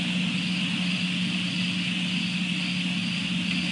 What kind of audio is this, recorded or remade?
recorded